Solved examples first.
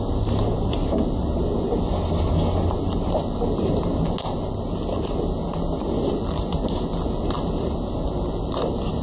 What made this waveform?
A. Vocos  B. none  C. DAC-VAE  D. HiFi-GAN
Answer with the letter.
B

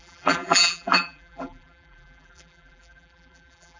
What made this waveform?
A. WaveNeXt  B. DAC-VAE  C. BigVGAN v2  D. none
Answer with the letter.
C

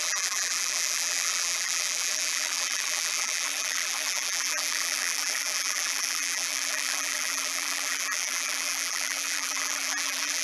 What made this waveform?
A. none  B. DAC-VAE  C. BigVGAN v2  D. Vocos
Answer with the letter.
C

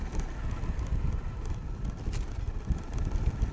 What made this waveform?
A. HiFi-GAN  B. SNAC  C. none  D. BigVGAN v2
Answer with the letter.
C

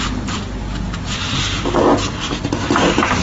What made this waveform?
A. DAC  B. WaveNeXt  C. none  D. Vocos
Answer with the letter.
C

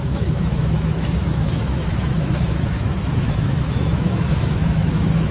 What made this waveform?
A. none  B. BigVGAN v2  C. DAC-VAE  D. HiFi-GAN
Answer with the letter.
C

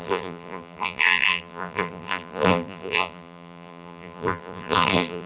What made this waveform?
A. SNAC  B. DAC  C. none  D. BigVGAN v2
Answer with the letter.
D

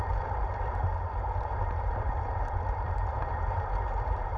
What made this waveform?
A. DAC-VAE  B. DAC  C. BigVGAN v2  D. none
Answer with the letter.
C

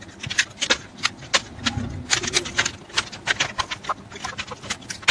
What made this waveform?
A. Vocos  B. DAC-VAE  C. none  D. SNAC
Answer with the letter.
C